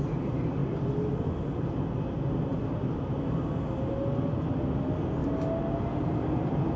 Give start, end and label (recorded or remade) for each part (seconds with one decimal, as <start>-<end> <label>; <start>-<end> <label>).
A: 0.0-6.8 recorded

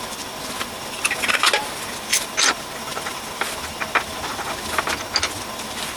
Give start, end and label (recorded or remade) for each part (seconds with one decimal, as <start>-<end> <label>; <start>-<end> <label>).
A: 0.0-6.0 recorded